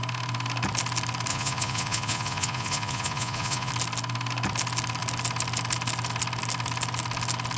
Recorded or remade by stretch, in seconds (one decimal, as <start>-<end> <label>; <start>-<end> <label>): 0.0-1.3 recorded; 1.3-3.7 remade; 3.7-7.6 recorded